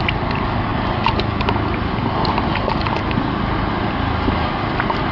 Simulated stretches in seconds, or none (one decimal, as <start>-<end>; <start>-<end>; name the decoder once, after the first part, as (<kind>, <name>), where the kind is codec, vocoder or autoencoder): none